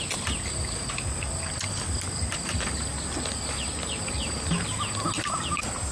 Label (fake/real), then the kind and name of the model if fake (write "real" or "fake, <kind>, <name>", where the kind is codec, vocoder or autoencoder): real